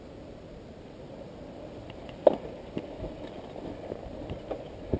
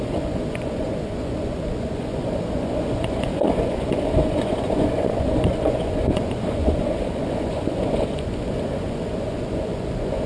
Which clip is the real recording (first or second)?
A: first